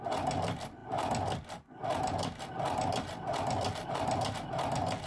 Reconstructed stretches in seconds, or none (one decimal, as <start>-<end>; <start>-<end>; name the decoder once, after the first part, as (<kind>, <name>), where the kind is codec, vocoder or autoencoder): none